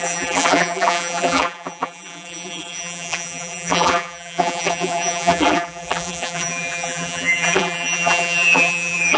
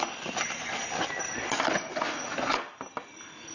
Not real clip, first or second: first